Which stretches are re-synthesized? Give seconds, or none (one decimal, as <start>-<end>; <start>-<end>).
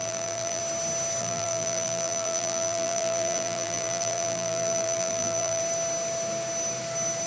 0.0-0.6; 1.2-5.6